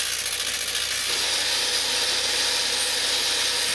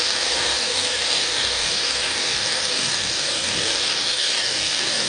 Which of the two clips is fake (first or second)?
second